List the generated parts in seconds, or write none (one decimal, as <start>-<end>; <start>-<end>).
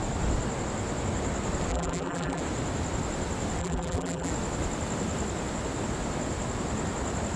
1.7-2.4; 3.6-4.3